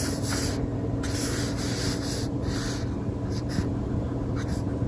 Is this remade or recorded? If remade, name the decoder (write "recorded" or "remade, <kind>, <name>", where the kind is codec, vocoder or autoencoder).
recorded